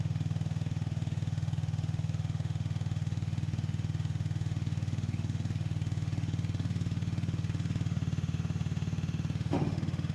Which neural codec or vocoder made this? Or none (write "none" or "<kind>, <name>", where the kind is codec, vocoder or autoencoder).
autoencoder, DAC-VAE